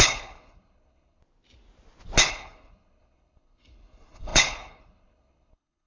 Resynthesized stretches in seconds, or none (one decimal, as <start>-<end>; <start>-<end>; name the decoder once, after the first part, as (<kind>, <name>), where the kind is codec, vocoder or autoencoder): 0.0-1.2 (codec, HILCodec); 2.3-5.9